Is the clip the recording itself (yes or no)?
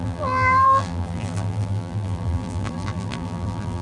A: no